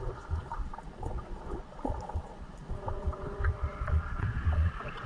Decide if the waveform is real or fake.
fake